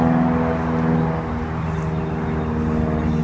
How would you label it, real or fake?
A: real